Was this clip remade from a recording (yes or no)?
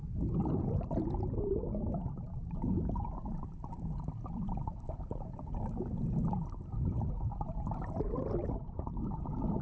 no